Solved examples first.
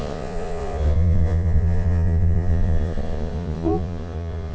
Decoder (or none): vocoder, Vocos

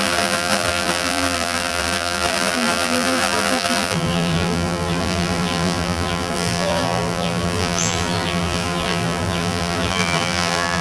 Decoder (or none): vocoder, BigVGAN v2